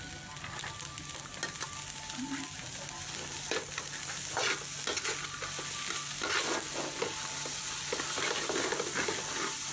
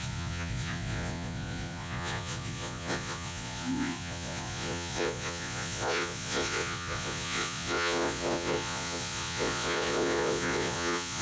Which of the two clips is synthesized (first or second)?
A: second